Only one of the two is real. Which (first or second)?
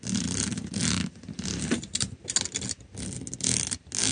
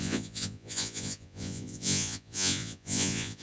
first